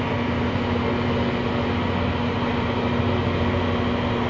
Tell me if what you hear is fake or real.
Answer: real